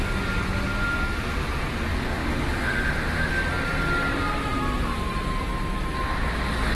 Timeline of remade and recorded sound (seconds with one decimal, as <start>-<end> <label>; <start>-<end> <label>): 0.0-1.9 recorded; 1.9-3.3 remade; 3.3-6.7 recorded